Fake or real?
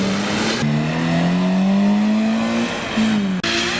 real